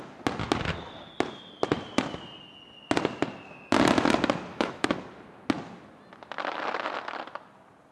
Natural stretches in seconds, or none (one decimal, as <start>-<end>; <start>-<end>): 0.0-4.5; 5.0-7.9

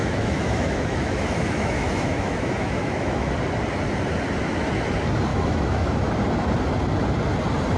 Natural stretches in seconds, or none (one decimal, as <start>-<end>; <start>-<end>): 3.3-5.3; 6.0-7.8

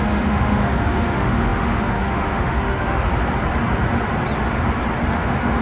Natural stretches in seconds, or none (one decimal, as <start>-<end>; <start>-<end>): 3.1-5.1

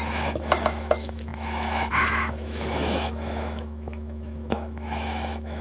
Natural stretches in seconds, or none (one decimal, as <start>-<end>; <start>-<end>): none

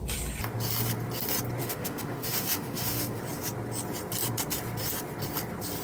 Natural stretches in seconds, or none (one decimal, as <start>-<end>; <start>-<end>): 0.0-1.6; 3.2-5.8

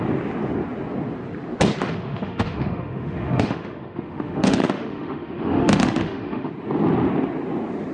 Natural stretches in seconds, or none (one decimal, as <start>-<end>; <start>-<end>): 0.0-1.8; 6.5-7.9